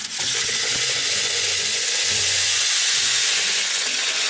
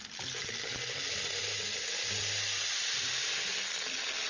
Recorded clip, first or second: second